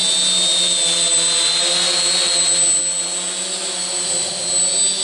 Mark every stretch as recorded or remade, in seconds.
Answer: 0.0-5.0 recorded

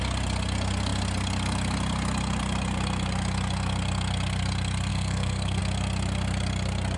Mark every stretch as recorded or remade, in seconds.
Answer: 0.0-4.9 recorded; 4.9-5.6 remade; 5.6-7.0 recorded

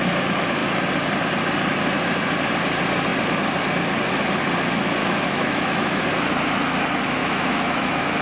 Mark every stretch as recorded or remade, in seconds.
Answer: 0.0-5.0 recorded; 5.0-6.1 remade; 6.1-7.2 recorded; 7.2-8.2 remade